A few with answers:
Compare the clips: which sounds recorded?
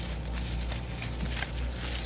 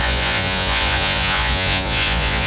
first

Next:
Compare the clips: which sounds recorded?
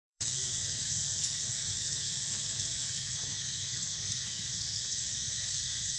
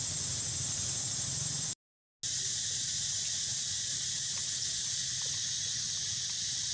second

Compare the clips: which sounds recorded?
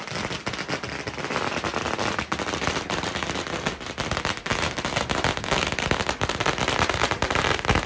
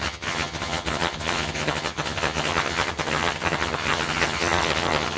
first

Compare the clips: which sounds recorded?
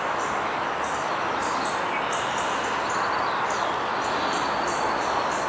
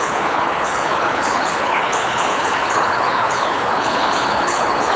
first